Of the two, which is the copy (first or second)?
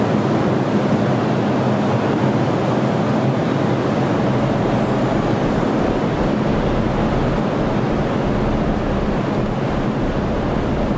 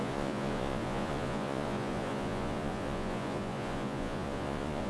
second